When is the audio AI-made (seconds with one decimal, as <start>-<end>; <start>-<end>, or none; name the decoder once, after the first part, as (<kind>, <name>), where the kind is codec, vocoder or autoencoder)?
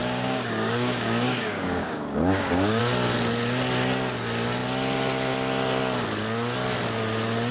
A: 0.0-2.8 (codec, DAC)